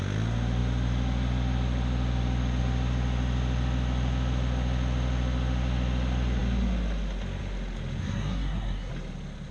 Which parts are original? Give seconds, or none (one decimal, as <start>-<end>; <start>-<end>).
0.0-8.0; 8.9-9.5